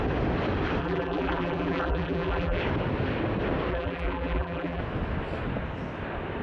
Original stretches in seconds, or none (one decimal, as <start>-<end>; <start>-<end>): 0.0-0.8; 2.6-3.7; 4.8-6.4